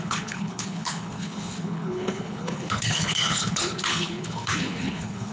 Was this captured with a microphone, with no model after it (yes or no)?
no